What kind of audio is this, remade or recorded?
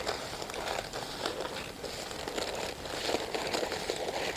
recorded